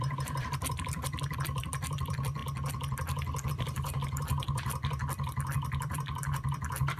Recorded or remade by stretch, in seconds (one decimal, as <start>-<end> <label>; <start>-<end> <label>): 0.0-2.4 remade; 2.4-3.5 recorded; 3.5-7.0 remade